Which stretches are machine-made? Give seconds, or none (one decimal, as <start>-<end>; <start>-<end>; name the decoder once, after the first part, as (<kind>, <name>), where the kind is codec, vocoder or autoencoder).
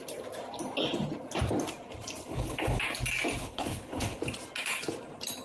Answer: 2.3-2.8 (codec, HILCodec); 3.4-4.2